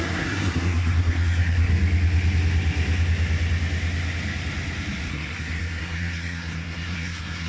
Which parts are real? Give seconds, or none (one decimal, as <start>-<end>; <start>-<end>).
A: 1.7-5.1